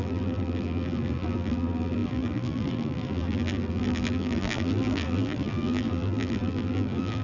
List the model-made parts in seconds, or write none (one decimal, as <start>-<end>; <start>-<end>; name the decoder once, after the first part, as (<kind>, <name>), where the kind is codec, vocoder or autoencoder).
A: 0.0-7.2 (vocoder, BigVGAN v2)